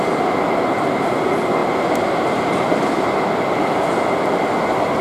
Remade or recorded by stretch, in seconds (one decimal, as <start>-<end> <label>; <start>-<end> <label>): 0.0-5.0 recorded